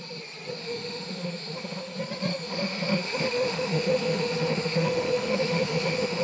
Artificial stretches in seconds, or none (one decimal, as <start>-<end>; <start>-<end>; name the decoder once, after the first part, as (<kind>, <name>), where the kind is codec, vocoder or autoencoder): 0.6-1.9 (autoencoder, DAC-VAE); 2.3-6.2